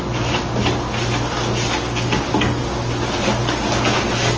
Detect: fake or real real